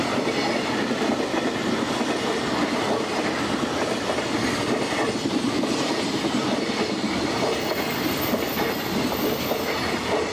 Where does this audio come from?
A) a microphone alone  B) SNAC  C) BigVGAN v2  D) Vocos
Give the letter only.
A